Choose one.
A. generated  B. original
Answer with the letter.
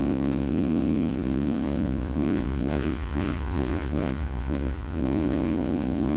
A